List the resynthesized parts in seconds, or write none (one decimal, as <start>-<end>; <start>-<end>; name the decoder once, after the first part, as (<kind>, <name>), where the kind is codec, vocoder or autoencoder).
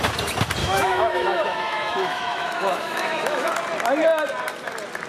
0.6-3.5 (autoencoder, DAC-VAE)